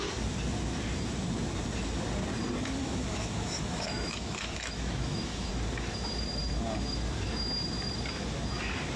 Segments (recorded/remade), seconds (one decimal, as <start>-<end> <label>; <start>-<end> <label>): 0.0-2.8 recorded; 2.8-5.5 remade; 5.5-9.0 recorded